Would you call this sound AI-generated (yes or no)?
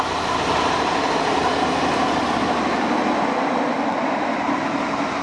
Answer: no